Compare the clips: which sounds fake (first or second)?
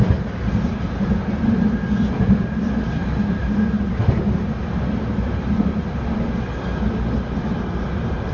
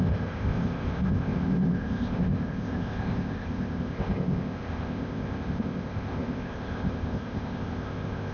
second